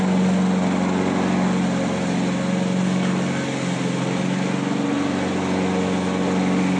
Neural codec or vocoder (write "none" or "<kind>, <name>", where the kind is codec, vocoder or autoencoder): none